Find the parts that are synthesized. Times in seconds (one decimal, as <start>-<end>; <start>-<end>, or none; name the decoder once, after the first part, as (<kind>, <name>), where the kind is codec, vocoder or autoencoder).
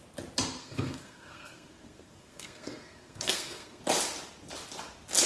0.6-3.8 (codec, SNAC)